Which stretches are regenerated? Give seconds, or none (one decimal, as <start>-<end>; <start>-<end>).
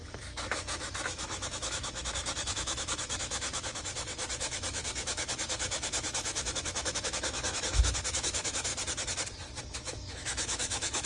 0.0-8.7; 9.6-11.1